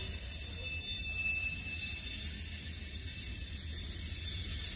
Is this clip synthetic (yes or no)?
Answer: no